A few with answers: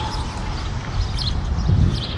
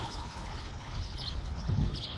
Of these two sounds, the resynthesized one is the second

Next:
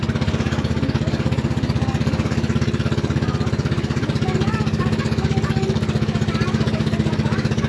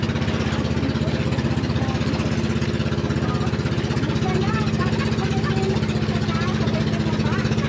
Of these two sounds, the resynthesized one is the first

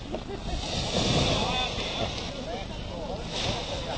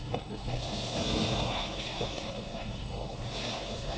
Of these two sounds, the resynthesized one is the second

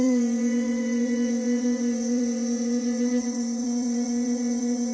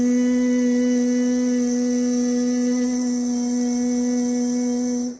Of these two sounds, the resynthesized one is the first